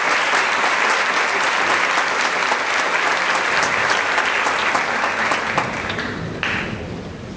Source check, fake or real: real